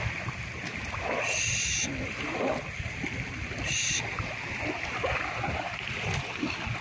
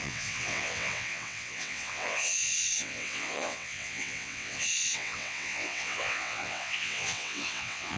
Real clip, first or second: first